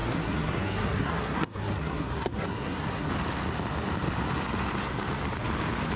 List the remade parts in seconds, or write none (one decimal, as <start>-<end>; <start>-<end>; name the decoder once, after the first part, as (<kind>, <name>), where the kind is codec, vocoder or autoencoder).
0.0-3.1 (codec, SNAC)